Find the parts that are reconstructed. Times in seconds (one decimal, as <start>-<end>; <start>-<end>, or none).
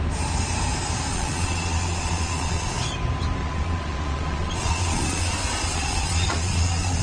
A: 1.1-2.7; 3.4-5.3; 5.7-7.0